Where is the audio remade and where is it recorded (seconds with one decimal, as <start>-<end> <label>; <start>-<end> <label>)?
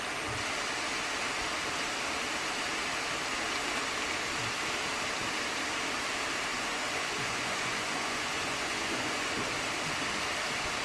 0.0-6.5 recorded; 6.5-9.5 remade; 9.5-10.8 recorded